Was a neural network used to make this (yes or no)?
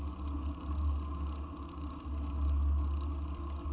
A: no